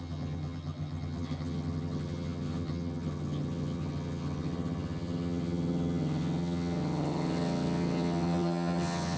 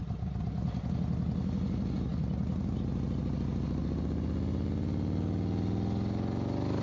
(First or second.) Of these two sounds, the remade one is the first